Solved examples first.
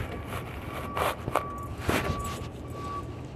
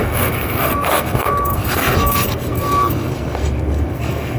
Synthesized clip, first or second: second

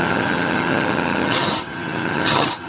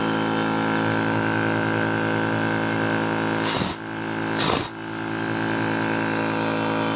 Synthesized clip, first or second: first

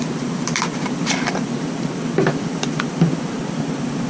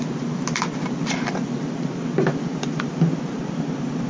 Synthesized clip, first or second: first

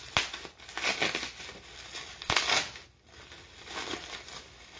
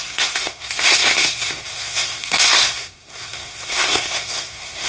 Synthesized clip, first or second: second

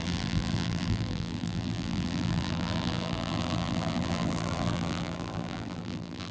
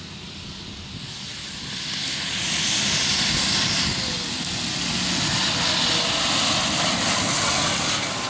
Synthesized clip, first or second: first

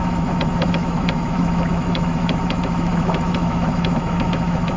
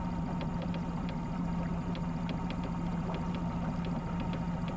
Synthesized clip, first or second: first